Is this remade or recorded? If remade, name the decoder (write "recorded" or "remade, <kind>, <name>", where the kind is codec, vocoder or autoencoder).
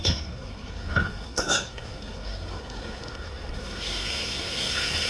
remade, codec, SNAC